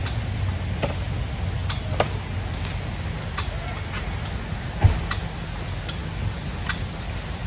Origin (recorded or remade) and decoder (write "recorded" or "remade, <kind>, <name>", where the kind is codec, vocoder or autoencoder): recorded